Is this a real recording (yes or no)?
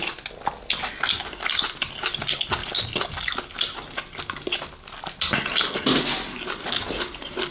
yes